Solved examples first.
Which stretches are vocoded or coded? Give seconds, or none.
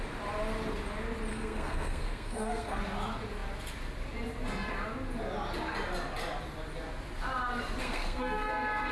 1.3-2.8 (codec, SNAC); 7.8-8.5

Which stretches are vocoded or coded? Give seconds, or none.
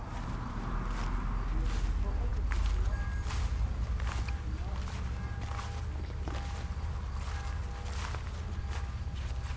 none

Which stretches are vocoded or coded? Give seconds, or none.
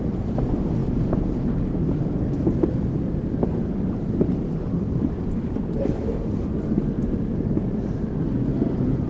none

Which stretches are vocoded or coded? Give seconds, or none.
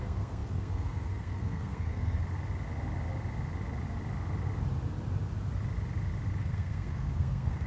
0.0-2.2 (codec, SNAC); 6.4-7.7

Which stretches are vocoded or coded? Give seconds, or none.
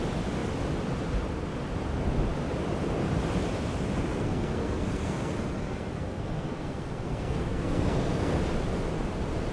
4.1-8.4 (codec, SNAC)